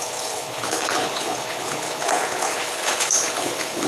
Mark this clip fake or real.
fake